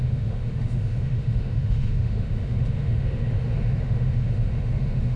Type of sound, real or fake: fake